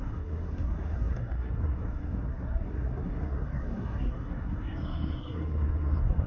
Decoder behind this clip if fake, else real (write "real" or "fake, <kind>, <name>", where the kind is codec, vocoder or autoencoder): fake, codec, SNAC